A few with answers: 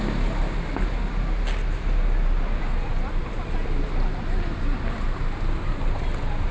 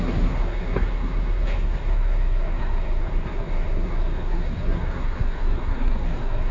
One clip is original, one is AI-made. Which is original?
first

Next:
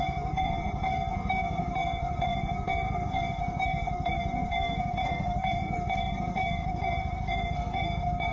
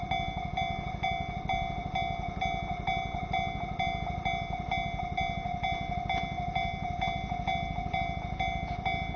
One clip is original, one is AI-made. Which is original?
second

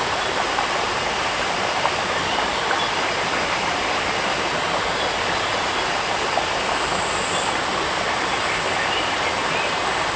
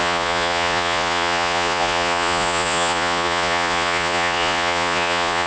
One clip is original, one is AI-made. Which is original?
first